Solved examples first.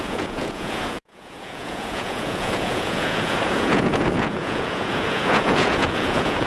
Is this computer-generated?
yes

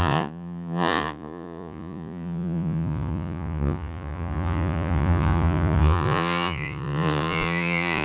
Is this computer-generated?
yes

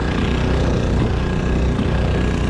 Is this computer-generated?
no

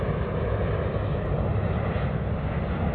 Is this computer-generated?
no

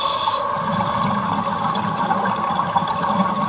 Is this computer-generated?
no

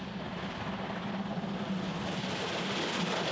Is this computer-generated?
no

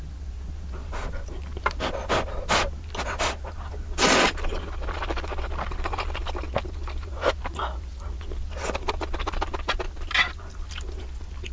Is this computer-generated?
no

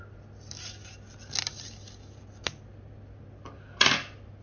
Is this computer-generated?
no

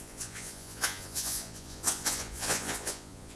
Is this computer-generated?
yes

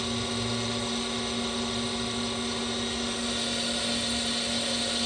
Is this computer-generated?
no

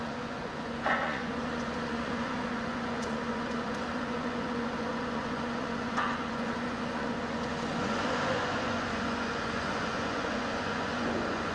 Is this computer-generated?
yes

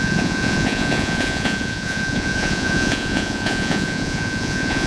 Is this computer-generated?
yes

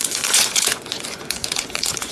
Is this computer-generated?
yes